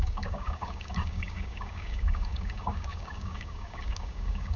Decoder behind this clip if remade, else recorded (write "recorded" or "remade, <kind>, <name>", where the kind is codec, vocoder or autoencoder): remade, codec, DAC